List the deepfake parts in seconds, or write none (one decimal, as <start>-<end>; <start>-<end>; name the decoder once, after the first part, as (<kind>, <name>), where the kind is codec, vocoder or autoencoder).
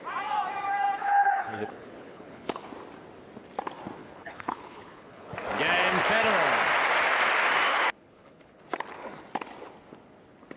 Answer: 1.0-2.7 (codec, HILCodec); 4.0-5.3; 7.7-8.6